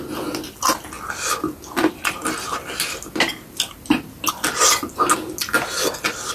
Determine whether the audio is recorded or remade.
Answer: recorded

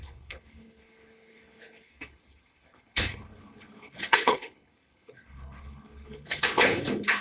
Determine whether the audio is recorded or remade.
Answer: remade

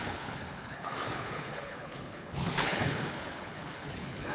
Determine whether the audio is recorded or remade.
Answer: remade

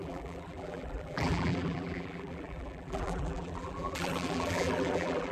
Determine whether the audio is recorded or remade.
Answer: remade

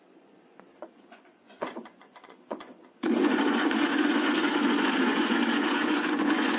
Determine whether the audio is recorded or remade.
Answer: remade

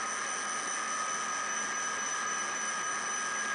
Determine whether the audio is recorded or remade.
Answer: recorded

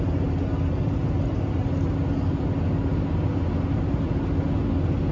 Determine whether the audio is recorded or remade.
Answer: recorded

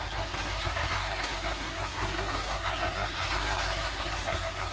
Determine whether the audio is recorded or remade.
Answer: remade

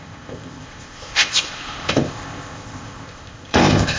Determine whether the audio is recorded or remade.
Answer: remade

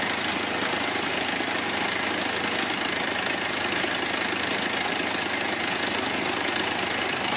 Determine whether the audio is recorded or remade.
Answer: recorded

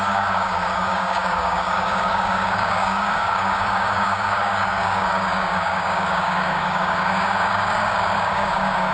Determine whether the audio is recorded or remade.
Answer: remade